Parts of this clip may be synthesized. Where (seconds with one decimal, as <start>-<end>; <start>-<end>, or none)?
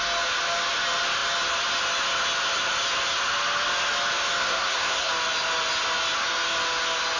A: 4.4-5.1